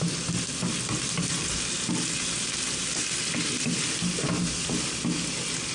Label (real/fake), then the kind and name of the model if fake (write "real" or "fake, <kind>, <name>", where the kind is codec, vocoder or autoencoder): real